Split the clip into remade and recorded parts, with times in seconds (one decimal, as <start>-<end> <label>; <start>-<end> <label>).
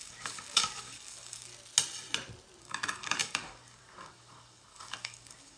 0.0-1.5 remade; 1.5-2.6 recorded; 2.6-5.6 remade